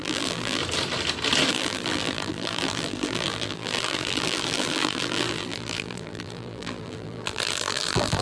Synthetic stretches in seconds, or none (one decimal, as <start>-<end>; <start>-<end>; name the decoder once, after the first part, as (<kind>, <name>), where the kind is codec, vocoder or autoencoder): 0.0-0.6 (vocoder, BigVGAN v2); 1.5-8.2